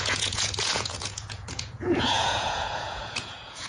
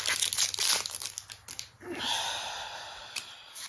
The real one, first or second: second